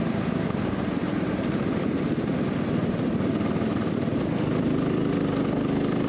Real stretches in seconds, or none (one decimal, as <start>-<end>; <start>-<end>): 0.0-1.0; 2.0-2.8; 4.3-6.1